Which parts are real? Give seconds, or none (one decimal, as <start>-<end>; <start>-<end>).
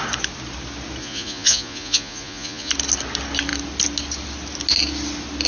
0.0-1.0; 2.7-5.5